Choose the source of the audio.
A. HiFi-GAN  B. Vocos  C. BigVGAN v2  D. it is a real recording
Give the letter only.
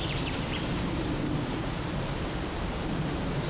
C